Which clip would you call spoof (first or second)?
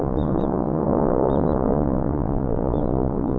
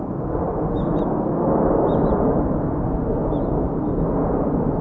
first